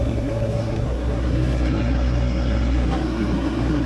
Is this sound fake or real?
fake